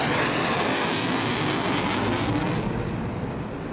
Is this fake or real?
real